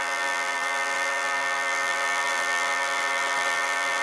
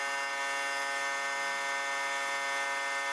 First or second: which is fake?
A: first